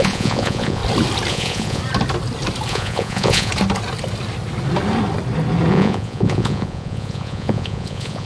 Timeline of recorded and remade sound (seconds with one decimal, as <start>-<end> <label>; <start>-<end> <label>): 0.0-0.8 remade; 0.8-1.3 recorded; 1.3-1.8 remade; 1.8-2.7 recorded; 2.7-3.5 remade; 3.5-5.7 recorded; 5.7-8.3 remade